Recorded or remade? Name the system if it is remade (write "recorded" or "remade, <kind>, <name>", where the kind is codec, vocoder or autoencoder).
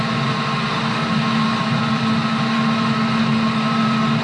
recorded